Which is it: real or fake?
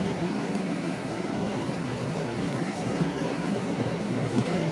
fake